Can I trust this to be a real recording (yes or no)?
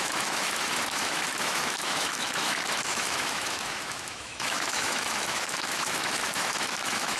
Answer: no